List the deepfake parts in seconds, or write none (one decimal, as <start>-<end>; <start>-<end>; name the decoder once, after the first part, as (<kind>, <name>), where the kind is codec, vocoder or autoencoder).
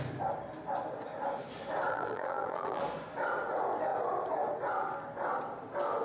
1.9-2.8 (vocoder, BigVGAN v2)